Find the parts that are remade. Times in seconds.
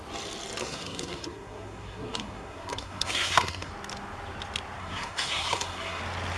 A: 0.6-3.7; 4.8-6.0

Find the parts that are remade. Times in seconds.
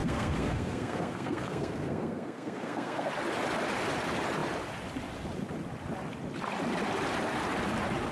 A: 0.0-3.1